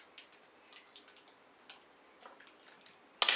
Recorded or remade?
recorded